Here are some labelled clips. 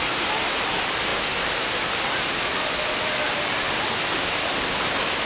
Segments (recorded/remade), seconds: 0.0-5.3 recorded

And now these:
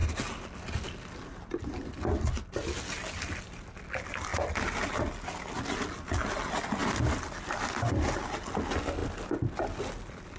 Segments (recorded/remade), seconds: 0.0-10.4 recorded

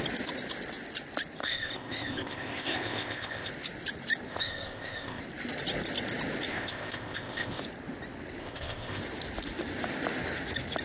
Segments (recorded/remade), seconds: 0.0-1.4 recorded; 1.4-3.5 remade; 3.5-4.3 recorded; 4.3-5.2 remade; 5.2-6.5 recorded; 6.5-7.6 remade; 7.6-8.4 recorded; 8.4-9.0 remade; 9.0-10.8 recorded

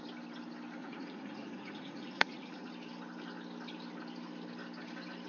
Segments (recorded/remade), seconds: 0.0-0.8 recorded; 0.8-2.7 remade; 2.7-5.3 recorded

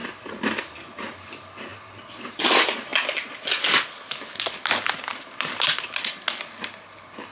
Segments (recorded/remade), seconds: 0.0-0.8 remade; 0.8-7.3 recorded

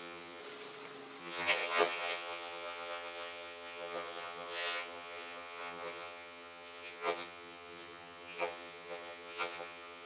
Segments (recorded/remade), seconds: 0.0-0.4 remade; 0.4-1.2 recorded; 1.2-10.1 remade

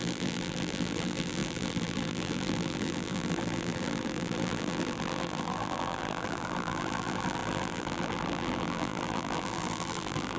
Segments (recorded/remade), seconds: 0.0-10.4 remade

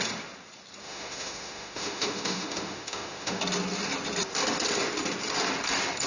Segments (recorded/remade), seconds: 0.0-0.8 recorded; 0.8-3.4 remade; 3.4-6.1 recorded